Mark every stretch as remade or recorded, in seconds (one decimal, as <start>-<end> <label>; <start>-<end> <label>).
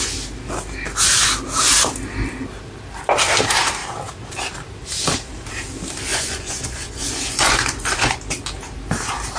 0.0-6.1 recorded; 6.1-8.2 remade; 8.2-9.4 recorded